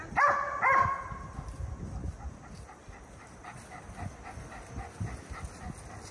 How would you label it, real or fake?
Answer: real